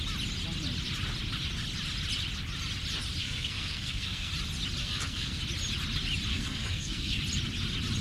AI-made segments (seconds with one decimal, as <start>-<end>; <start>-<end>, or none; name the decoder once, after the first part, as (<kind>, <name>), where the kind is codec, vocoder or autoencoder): 3.2-4.3 (codec, SNAC); 4.8-5.4; 6.3-7.2